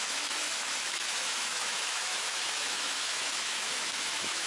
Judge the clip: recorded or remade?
remade